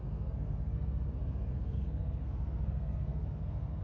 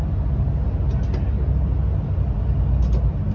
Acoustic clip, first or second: second